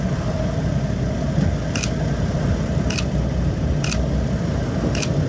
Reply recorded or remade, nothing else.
recorded